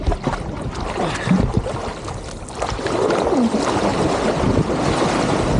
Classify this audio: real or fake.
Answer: real